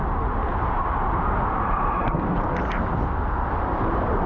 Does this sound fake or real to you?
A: real